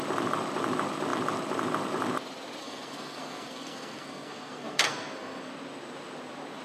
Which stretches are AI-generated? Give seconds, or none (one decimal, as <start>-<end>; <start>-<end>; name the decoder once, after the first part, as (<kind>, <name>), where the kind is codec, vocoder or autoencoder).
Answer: 2.6-5.5 (codec, SNAC)